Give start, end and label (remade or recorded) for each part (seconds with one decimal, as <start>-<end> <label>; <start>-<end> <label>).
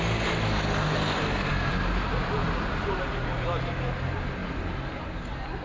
0.0-5.6 recorded